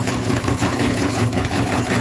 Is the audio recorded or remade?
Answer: remade